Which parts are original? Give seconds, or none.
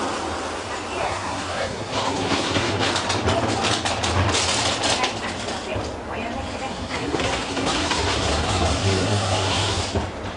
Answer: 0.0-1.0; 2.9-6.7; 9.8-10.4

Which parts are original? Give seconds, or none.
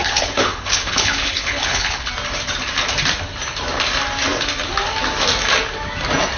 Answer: 2.1-6.4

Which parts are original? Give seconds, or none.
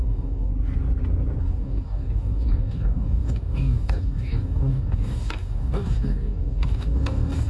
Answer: 0.5-1.4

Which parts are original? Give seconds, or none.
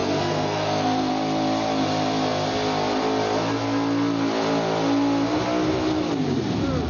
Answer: 1.1-6.9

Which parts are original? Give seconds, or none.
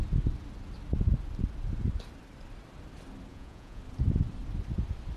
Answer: 0.0-3.3; 3.8-5.2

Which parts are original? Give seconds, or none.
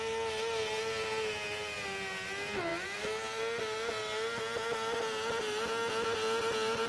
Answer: 0.0-6.9